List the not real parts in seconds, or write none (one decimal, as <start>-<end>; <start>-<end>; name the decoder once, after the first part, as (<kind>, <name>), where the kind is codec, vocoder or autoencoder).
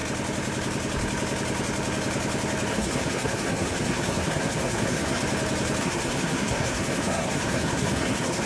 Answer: 2.7-5.2 (codec, SNAC); 5.8-8.5